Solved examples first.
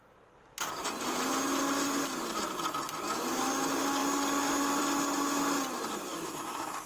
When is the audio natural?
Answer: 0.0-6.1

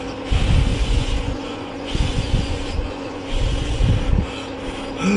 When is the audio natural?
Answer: 0.0-0.7; 3.8-5.2

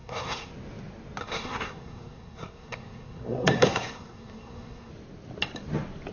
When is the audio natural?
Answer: 0.5-1.2; 4.9-6.1

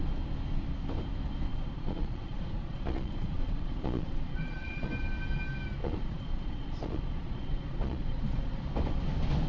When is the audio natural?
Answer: 0.0-1.5; 4.9-5.8; 8.6-9.5

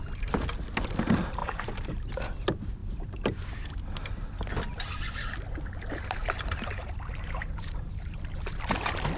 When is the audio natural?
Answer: 0.0-1.4; 2.1-6.2; 8.6-9.2

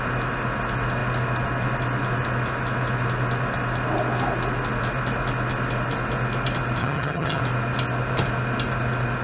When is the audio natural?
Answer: 0.0-6.8; 7.4-9.2

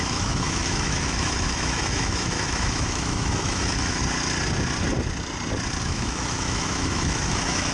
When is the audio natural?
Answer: 4.0-5.8